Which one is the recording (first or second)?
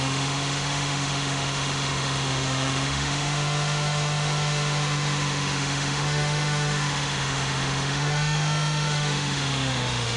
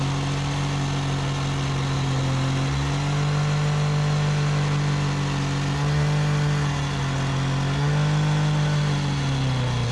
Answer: second